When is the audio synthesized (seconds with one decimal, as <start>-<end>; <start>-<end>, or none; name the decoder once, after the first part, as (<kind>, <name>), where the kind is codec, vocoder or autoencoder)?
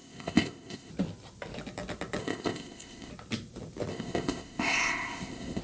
0.0-0.9 (codec, ZipCodec); 2.2-3.1; 3.9-5.6